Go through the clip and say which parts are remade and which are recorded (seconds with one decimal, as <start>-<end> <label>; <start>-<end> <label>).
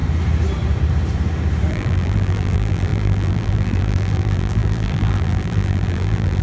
0.0-1.7 recorded; 1.7-6.4 remade